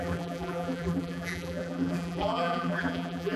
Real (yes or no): no